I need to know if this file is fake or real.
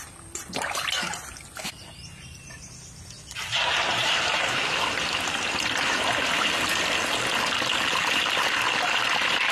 real